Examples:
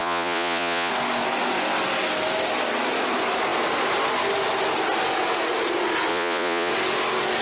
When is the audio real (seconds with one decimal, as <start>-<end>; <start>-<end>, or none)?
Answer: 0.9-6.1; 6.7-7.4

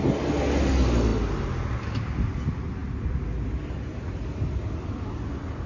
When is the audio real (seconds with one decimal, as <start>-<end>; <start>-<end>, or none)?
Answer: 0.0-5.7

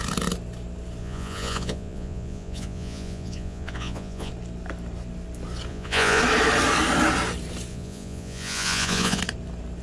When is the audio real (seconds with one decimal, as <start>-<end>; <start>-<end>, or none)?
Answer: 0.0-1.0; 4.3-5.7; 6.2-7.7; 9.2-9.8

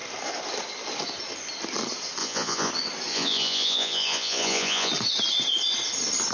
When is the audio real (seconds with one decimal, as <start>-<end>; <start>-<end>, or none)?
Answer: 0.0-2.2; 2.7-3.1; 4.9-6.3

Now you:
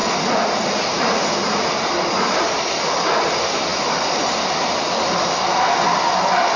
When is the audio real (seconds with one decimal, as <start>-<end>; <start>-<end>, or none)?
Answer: 0.0-6.6